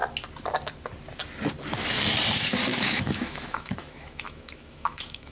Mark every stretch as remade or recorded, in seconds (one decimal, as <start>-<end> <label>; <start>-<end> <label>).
0.0-2.7 recorded; 2.7-5.3 remade